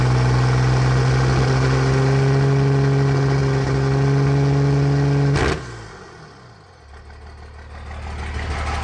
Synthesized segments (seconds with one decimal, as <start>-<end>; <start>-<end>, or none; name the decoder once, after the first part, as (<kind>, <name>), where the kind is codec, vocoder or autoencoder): none